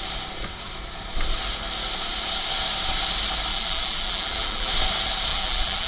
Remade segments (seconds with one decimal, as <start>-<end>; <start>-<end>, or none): 3.5-4.7; 5.3-5.9